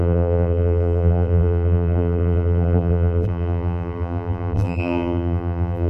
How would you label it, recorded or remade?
remade